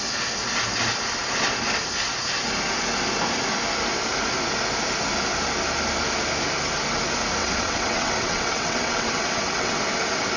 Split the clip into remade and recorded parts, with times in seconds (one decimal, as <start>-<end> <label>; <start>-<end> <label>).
0.0-7.4 recorded; 7.4-9.8 remade; 9.8-10.4 recorded